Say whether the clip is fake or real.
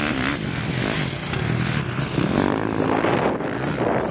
real